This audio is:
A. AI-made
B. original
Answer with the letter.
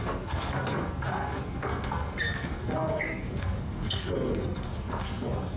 A